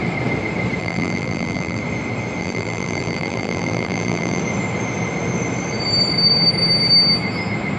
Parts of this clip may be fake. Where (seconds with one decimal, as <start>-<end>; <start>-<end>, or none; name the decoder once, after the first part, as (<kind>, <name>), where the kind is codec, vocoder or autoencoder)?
0.8-1.8 (vocoder, BigVGAN v2); 2.4-4.4